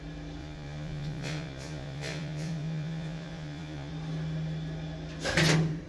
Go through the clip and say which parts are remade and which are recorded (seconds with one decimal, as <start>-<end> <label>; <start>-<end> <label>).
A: 0.0-0.4 recorded; 0.4-3.9 remade; 3.9-5.9 recorded